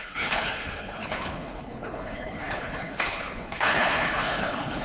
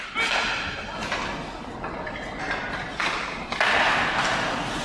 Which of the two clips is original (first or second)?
second